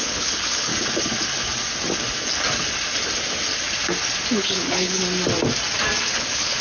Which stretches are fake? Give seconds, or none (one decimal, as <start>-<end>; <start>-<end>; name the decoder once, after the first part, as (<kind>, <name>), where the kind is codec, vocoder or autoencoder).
0.0-0.7 (codec, HILCodec); 4.3-5.0; 6.0-6.6